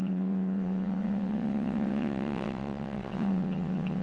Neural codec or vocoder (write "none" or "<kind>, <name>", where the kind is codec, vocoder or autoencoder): vocoder, WaveNeXt